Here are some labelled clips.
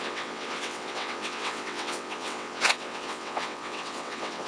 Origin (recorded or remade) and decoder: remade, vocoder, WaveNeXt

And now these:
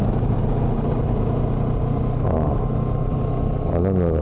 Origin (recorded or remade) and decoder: recorded